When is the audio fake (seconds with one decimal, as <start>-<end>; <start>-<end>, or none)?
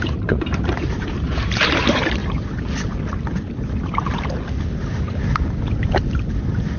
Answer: 0.0-2.2; 6.3-6.8